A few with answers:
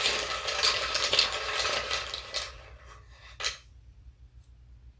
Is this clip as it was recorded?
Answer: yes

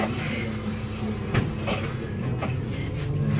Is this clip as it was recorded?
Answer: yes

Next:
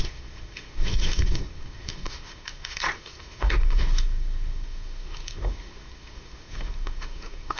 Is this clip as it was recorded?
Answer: no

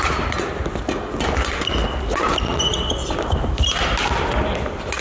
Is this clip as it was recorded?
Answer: yes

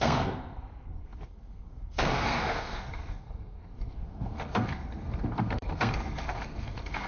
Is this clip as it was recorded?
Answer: no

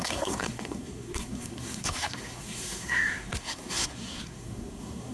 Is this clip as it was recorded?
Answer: no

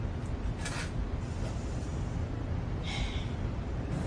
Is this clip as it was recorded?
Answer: yes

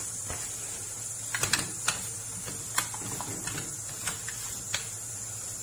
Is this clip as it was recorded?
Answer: yes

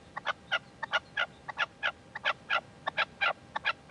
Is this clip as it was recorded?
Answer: yes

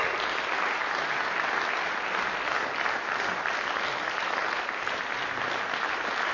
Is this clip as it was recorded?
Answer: yes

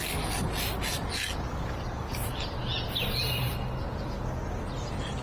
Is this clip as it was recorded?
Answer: yes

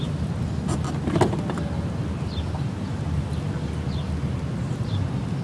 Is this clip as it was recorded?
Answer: yes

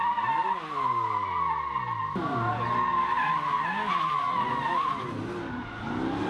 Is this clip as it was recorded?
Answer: yes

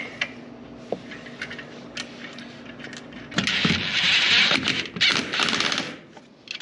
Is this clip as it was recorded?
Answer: yes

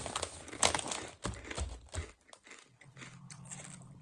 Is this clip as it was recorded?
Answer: yes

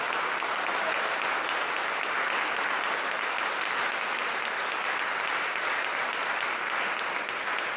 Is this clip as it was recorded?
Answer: yes